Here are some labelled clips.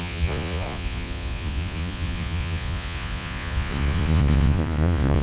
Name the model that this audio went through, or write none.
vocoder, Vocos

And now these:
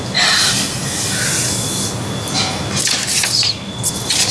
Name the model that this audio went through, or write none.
none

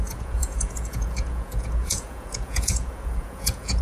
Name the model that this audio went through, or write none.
vocoder, Vocos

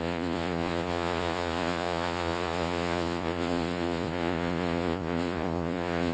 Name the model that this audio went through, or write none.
vocoder, Vocos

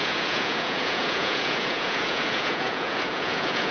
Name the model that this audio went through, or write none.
vocoder, Vocos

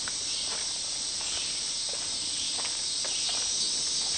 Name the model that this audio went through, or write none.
none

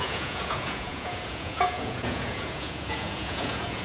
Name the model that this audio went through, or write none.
vocoder, Vocos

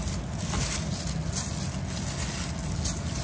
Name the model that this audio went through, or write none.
none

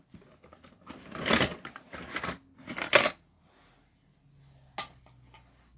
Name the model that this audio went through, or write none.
none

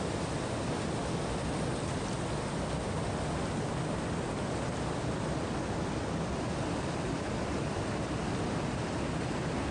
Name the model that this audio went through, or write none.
none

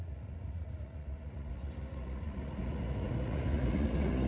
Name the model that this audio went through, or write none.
vocoder, Vocos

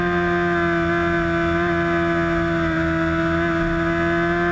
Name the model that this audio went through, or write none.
none